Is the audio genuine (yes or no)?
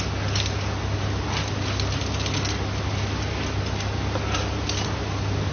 yes